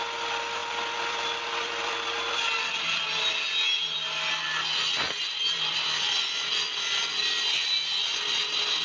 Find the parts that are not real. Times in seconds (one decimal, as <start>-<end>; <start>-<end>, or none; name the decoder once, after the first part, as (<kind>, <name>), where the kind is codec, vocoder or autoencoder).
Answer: 0.6-3.3 (vocoder, BigVGAN v2); 3.8-8.0

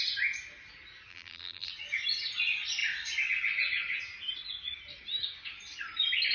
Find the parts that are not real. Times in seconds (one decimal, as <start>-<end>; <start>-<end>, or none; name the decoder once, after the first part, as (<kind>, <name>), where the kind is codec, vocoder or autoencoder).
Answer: 1.1-1.7 (vocoder, BigVGAN v2)

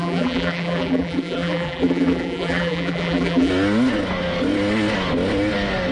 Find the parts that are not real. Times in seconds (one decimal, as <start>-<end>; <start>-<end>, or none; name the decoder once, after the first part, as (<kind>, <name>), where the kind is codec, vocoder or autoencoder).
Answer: 0.0-3.5 (vocoder, BigVGAN v2)

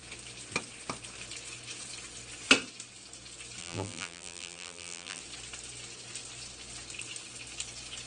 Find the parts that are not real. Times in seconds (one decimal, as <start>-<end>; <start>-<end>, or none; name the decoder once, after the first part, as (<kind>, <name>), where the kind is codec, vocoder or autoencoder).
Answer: 3.6-5.2 (vocoder, BigVGAN v2)

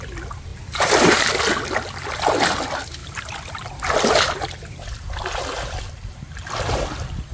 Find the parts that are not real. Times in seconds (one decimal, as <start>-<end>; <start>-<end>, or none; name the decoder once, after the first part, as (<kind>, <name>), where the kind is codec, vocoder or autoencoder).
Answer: 0.5-1.3 (vocoder, BigVGAN v2)

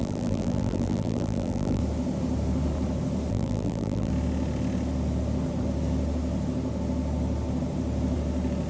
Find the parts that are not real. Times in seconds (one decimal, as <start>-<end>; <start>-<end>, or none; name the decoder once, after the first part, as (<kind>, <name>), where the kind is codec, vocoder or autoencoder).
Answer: 0.0-1.8 (vocoder, BigVGAN v2); 3.3-4.1

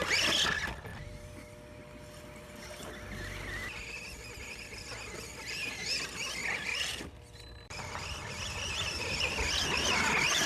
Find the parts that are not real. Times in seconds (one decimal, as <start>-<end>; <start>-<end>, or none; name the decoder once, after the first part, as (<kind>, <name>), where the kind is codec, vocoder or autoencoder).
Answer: 0.9-5.9 (vocoder, BigVGAN v2); 6.4-10.5

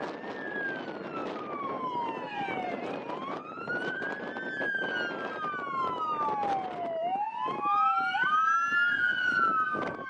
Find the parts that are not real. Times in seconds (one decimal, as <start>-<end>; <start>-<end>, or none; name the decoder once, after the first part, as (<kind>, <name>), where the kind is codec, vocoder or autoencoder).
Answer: 1.2-4.3 (vocoder, BigVGAN v2)